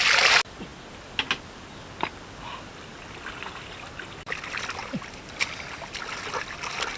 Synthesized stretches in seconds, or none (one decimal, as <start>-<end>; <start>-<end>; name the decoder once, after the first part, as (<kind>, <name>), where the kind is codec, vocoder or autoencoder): none